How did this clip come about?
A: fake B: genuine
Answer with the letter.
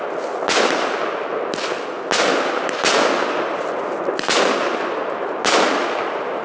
B